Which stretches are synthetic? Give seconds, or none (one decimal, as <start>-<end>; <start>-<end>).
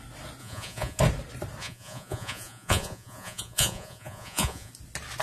0.4-1.0; 1.6-4.7